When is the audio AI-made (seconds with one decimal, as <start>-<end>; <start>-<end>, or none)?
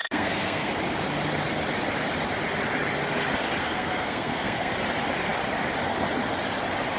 0.0-0.7; 3.6-4.7